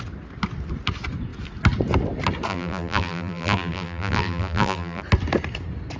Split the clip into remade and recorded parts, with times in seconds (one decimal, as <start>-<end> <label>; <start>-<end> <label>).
0.0-2.5 recorded; 2.5-5.0 remade; 5.0-6.0 recorded